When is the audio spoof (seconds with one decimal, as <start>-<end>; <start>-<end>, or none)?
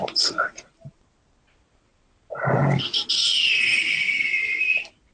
none